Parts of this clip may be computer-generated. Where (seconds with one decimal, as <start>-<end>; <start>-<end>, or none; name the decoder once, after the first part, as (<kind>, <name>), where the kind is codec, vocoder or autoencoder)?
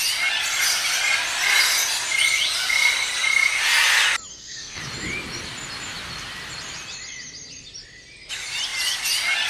4.3-4.8 (codec, SNAC)